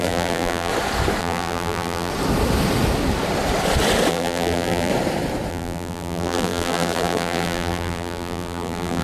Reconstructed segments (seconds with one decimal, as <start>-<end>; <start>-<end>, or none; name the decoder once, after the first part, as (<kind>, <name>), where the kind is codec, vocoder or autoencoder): 0.0-0.7 (vocoder, BigVGAN v2); 1.2-2.1; 4.1-4.9; 5.5-9.0